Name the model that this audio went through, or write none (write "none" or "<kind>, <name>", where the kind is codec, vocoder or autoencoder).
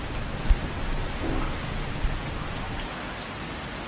none